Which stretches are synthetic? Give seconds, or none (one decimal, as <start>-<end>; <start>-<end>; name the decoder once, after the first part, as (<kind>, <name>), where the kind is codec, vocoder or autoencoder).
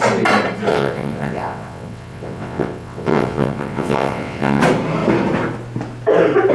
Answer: 0.7-4.6 (vocoder, WaveNeXt)